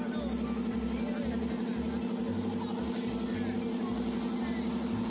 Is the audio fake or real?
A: real